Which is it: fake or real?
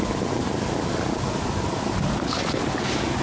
real